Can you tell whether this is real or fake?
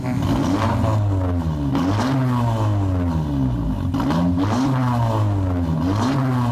real